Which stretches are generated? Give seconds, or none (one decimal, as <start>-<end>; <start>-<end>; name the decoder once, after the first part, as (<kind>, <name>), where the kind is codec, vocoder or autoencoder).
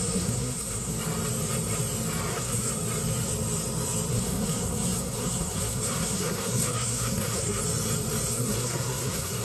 0.0-0.9 (codec, SNAC); 2.3-2.7; 4.1-7.6; 8.3-9.4